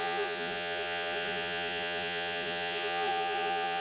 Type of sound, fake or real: fake